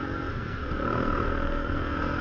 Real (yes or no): no